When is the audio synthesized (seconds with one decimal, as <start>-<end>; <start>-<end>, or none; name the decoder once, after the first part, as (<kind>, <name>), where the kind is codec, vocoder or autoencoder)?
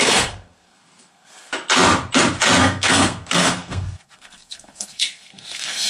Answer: 0.0-1.5 (codec, SNAC); 2.6-5.9